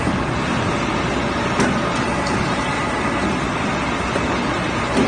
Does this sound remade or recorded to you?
recorded